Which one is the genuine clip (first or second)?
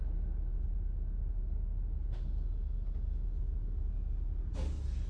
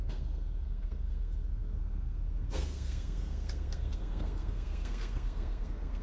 first